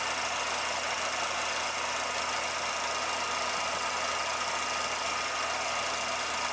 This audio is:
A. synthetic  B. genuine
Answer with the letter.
B